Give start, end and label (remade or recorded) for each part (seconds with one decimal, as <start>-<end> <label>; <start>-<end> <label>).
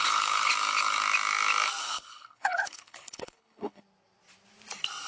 0.0-0.5 remade; 0.5-1.8 recorded; 1.8-3.8 remade; 3.8-5.1 recorded